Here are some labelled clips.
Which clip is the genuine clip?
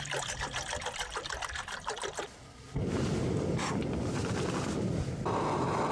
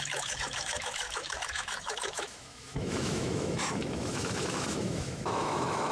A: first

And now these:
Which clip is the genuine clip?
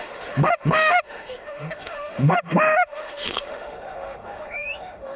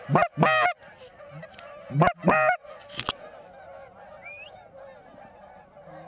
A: second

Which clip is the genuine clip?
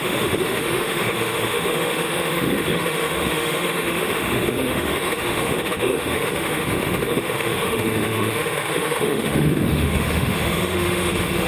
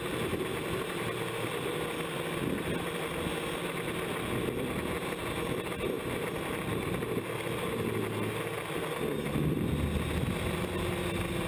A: second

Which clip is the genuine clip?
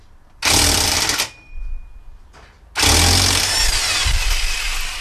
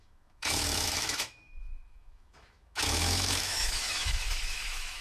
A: first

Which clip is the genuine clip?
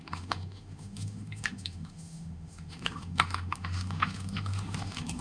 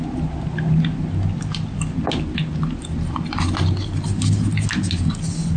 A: second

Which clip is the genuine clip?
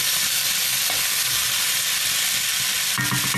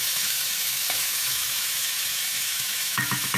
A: first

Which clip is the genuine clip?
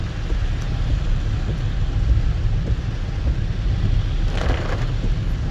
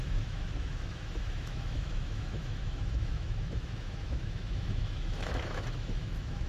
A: first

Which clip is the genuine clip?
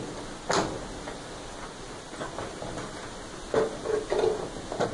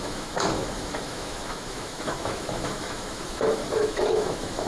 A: first